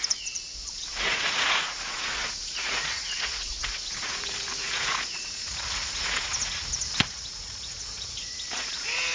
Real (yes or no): no